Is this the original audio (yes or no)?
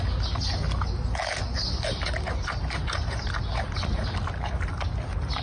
yes